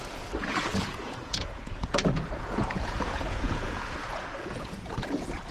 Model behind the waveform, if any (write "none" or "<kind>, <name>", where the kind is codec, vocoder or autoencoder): vocoder, Vocos